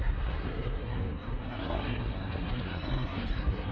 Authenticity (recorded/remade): remade